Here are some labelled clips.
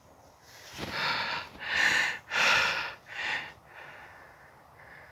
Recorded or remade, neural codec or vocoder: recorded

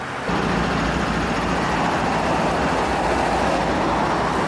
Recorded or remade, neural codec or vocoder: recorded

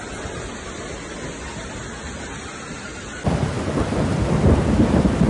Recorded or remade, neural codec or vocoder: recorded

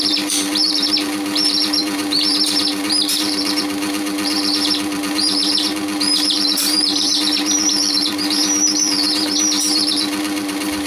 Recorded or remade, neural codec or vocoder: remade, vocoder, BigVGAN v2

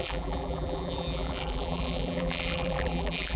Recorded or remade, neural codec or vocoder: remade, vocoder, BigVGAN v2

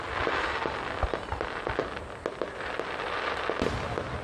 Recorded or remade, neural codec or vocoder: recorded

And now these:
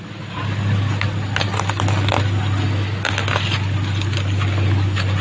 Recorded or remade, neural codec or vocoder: recorded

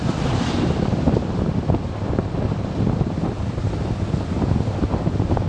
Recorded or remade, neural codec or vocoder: remade, vocoder, BigVGAN v2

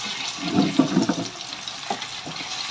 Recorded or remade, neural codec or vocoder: recorded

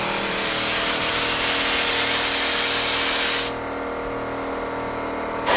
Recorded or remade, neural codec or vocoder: recorded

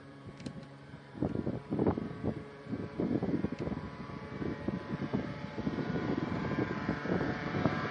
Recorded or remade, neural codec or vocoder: remade, vocoder, BigVGAN v2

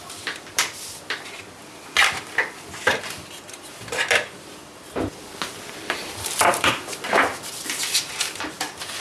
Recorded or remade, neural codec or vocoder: remade, vocoder, BigVGAN v2